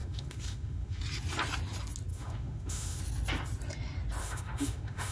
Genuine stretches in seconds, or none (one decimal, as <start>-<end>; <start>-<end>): 1.0-2.1; 3.0-4.2